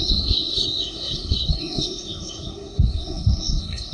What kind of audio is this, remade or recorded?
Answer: remade